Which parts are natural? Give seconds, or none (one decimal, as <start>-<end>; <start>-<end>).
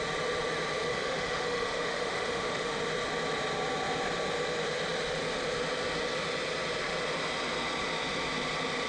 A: 0.0-0.9; 2.8-8.9